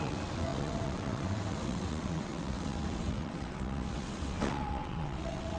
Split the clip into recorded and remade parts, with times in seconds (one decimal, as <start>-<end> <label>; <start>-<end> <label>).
0.0-5.6 remade